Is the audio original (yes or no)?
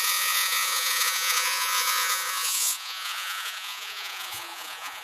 no